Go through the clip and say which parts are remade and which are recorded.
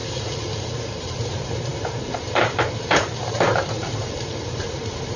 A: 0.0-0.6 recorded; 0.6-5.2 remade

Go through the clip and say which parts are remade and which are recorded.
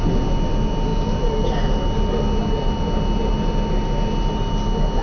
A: 0.0-5.0 recorded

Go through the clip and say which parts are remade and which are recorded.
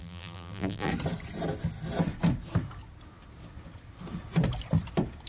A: 0.0-0.9 remade; 0.9-5.3 recorded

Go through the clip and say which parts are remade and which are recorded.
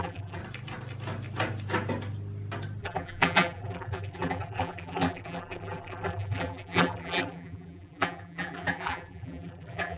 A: 0.0-0.4 remade; 0.4-2.8 recorded; 2.8-10.0 remade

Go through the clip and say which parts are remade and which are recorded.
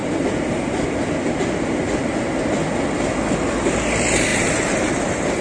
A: 0.0-2.0 remade; 2.0-4.3 recorded; 4.3-4.9 remade; 4.9-5.4 recorded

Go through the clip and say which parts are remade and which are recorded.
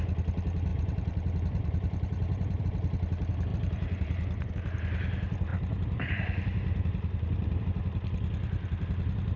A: 0.0-0.7 recorded; 0.7-2.6 remade; 2.6-3.5 recorded; 3.5-4.5 remade; 4.5-5.5 recorded; 5.5-7.6 remade; 7.6-9.4 recorded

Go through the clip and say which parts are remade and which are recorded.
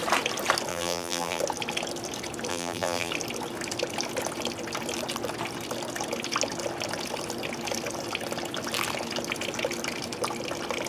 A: 0.0-0.7 recorded; 0.7-1.4 remade; 1.4-2.5 recorded; 2.5-3.1 remade; 3.1-10.9 recorded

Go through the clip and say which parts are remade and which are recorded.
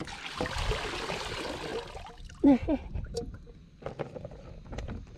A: 0.0-5.2 recorded